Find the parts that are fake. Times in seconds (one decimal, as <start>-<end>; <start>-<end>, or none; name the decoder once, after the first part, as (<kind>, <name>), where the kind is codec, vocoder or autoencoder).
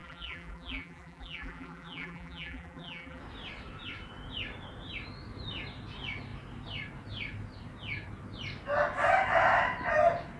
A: 0.0-3.2 (vocoder, BigVGAN v2)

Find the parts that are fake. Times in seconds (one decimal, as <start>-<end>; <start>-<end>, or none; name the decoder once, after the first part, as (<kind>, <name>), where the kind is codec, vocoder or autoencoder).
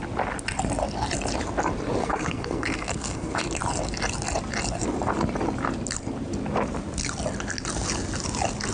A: 2.0-3.3 (codec, SNAC)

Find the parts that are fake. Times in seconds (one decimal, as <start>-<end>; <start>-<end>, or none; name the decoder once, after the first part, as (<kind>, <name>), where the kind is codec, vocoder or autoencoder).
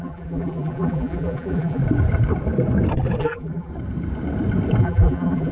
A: 0.0-1.8 (vocoder, BigVGAN v2); 3.2-3.7; 4.8-5.5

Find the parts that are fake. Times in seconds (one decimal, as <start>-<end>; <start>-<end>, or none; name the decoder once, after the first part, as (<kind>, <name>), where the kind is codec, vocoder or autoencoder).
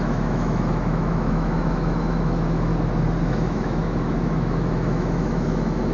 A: 0.0-2.7 (autoencoder, DAC-VAE); 3.2-5.9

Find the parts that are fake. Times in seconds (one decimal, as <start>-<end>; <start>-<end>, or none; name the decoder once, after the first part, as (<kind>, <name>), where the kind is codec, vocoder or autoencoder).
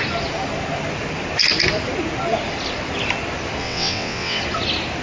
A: 3.6-4.4 (vocoder, WaveNeXt)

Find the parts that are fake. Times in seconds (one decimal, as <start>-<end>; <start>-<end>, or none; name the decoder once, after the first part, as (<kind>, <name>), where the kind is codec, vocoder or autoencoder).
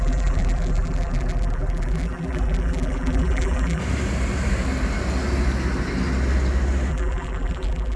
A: 0.0-3.8 (vocoder, BigVGAN v2); 6.9-8.0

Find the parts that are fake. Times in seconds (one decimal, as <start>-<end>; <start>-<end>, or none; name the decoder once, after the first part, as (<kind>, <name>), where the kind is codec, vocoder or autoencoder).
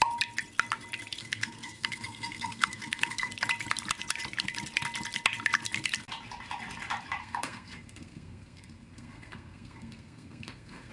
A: 1.2-3.3 (codec, SNAC); 7.2-10.9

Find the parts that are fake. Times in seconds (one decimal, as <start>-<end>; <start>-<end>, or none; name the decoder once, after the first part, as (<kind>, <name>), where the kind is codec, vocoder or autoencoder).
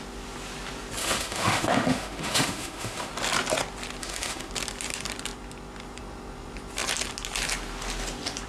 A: 1.0-3.1 (autoencoder, DAC-VAE); 4.0-4.5